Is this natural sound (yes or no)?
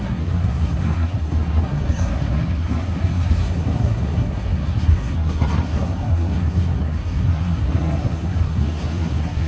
no